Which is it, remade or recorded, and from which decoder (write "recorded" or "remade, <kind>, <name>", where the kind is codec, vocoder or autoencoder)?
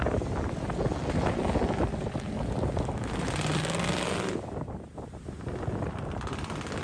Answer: recorded